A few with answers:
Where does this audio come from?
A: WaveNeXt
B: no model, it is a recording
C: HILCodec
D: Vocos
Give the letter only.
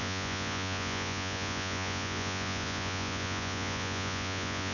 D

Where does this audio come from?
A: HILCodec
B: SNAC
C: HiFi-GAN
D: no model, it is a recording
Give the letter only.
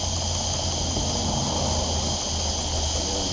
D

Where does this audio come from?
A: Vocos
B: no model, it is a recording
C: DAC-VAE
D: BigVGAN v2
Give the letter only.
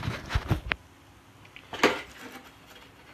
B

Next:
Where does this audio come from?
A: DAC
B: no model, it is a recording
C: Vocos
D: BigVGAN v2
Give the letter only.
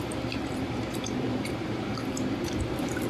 D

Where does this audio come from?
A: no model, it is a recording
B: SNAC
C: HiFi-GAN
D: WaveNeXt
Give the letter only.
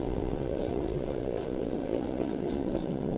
D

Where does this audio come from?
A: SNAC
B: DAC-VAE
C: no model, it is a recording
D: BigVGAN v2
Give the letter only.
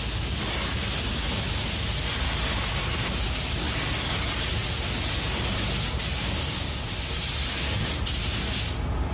C